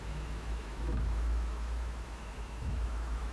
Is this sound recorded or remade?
remade